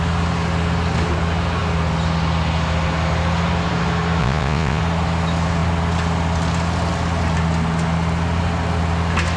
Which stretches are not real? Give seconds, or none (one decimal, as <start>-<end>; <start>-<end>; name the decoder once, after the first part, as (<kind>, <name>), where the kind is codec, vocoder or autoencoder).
4.2-4.8 (vocoder, Vocos)